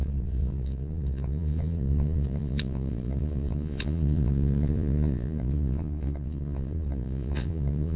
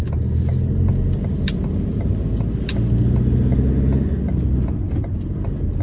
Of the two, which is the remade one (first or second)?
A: first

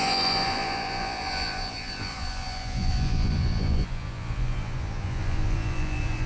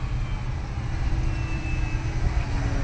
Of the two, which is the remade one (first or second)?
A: first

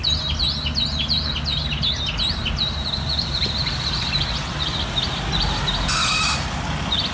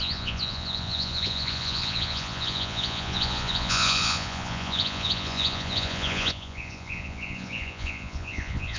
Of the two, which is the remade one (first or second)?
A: second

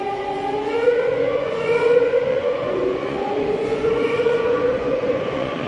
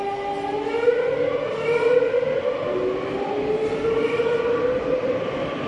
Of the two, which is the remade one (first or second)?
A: first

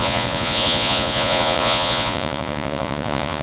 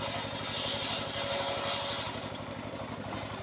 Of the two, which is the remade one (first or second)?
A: first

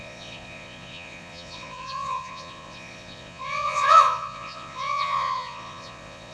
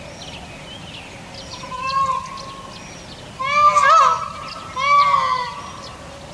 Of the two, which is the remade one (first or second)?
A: first